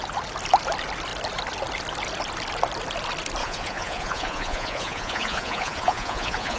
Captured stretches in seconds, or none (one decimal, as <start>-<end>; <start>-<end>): 0.0-3.4

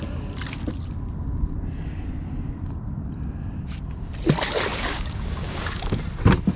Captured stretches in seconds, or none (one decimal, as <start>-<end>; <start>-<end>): 0.0-4.7; 6.0-6.6

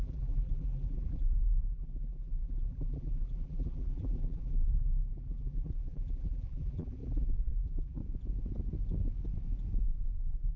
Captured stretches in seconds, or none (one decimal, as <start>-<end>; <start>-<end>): 8.0-10.2

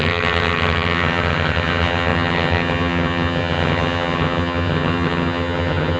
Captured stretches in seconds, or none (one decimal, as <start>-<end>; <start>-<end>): none

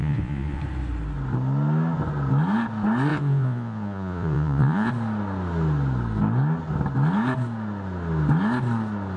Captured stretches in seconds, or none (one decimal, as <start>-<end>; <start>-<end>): 0.6-3.1; 4.9-9.2

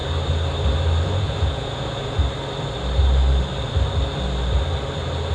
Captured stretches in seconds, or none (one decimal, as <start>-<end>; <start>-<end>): 0.0-1.2; 2.2-5.3

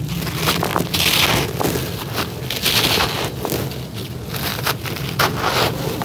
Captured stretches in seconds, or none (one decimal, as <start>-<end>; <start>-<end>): 0.0-4.5; 5.1-6.0